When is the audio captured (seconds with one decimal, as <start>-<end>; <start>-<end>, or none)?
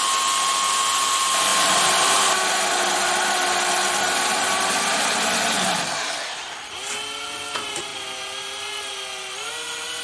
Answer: 0.0-1.5; 2.3-10.0